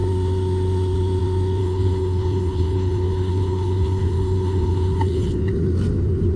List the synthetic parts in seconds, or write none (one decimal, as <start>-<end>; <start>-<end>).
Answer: 1.6-5.4